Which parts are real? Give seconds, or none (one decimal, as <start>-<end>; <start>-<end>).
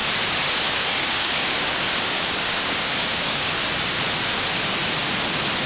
3.4-5.7